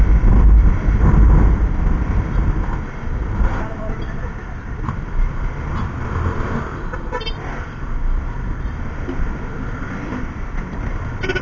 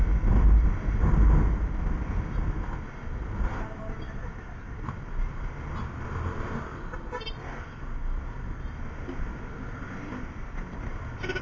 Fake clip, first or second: first